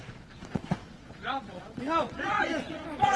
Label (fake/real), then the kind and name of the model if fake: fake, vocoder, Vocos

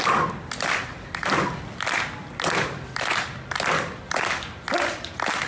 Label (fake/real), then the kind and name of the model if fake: real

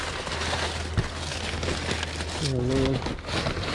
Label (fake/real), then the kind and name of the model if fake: real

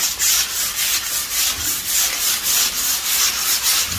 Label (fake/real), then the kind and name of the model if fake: real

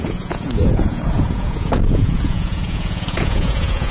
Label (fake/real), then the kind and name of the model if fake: fake, vocoder, Vocos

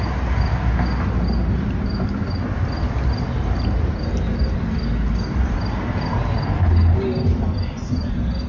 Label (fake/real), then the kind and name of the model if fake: real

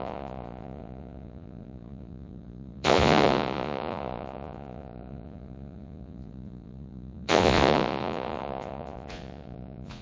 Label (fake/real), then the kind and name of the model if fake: fake, vocoder, Vocos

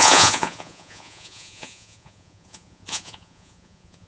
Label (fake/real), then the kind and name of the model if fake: fake, vocoder, Vocos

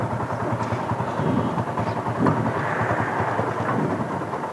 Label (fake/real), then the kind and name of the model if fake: real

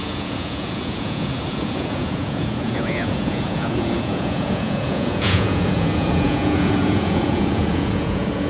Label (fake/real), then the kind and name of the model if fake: fake, vocoder, Vocos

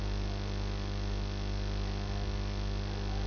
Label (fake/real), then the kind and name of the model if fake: real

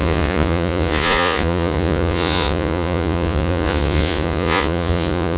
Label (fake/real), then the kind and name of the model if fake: fake, vocoder, Vocos